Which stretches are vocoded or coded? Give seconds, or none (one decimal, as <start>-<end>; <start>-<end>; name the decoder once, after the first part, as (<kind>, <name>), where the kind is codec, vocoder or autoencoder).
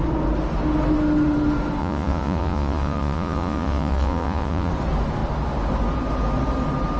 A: 1.8-4.7 (vocoder, Vocos)